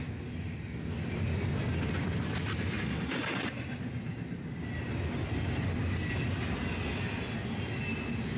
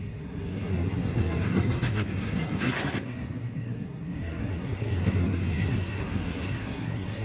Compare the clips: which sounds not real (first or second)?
second